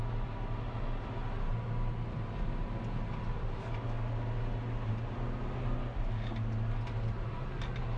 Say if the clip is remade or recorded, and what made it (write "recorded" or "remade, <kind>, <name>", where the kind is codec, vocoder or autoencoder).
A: recorded